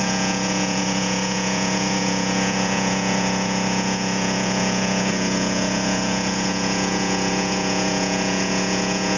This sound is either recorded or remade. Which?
remade